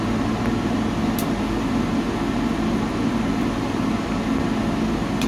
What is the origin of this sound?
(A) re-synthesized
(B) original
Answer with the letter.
B